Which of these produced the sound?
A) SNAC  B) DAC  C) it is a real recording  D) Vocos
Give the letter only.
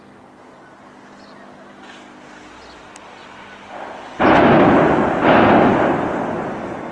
C